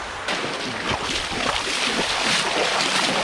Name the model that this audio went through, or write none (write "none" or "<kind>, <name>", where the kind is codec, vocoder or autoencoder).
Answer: none